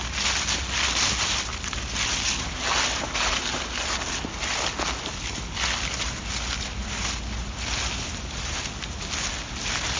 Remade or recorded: recorded